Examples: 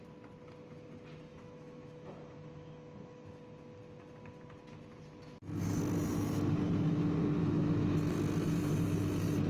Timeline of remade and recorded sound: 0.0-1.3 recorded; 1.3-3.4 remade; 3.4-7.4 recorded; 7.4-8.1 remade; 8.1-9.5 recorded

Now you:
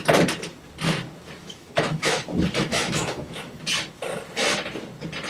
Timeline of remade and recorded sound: 0.0-1.4 recorded; 1.4-2.2 remade; 2.2-2.6 recorded; 2.6-3.6 remade; 3.6-5.3 recorded

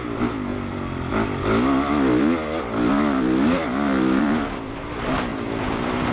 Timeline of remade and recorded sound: 0.0-6.1 recorded

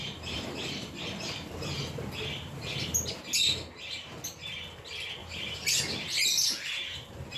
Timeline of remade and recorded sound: 0.0-1.8 remade; 1.8-5.2 recorded; 5.2-5.8 remade; 5.8-7.4 recorded